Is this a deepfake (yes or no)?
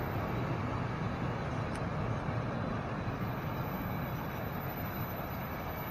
no